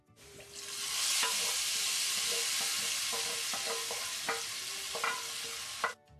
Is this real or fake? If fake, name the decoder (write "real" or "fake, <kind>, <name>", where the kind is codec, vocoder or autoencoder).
real